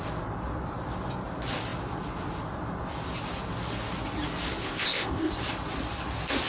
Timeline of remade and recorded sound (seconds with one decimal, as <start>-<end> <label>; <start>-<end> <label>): 0.0-4.6 recorded; 4.6-5.3 remade; 5.3-6.5 recorded